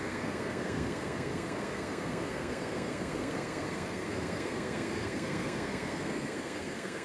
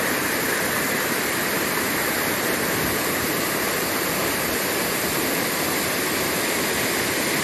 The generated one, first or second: first